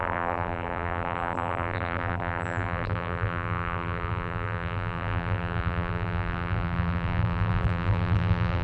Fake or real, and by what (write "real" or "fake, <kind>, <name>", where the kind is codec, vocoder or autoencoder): fake, vocoder, BigVGAN v2